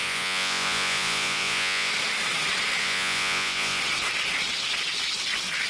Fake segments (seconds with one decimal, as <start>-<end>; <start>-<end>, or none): 0.0-1.9; 2.8-3.8